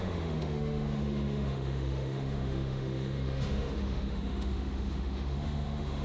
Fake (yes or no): yes